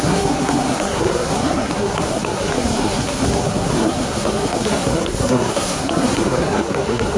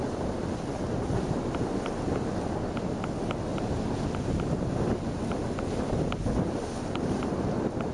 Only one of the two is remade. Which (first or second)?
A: first